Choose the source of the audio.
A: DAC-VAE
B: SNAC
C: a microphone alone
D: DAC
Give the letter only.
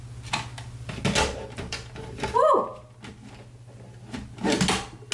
C